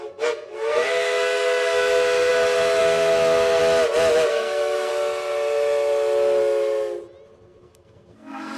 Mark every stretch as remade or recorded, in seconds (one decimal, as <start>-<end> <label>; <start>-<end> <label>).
0.0-2.3 remade; 2.3-2.8 recorded; 2.8-3.6 remade; 3.6-4.3 recorded; 4.3-4.9 remade; 4.9-7.4 recorded; 7.4-8.6 remade